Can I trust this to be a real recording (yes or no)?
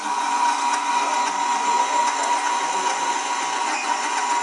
no